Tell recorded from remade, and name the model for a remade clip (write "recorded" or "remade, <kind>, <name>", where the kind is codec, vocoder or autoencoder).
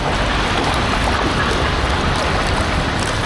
recorded